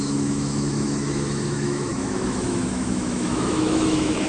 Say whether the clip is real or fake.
fake